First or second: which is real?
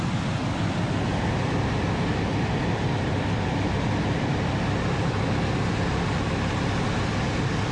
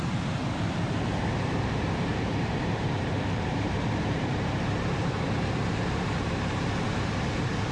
first